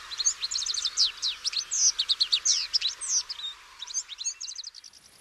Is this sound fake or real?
real